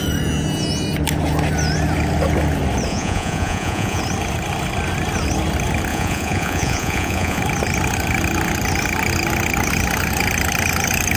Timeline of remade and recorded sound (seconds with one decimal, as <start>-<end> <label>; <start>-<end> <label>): 0.0-2.9 recorded; 2.9-4.0 remade; 4.0-5.9 recorded; 5.9-7.4 remade; 7.4-11.2 recorded